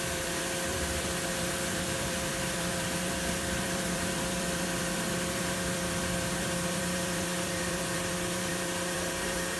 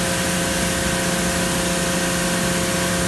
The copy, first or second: first